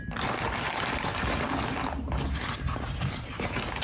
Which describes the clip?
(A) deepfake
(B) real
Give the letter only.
B